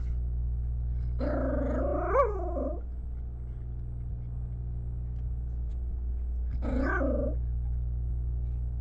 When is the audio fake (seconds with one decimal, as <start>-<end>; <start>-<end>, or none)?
none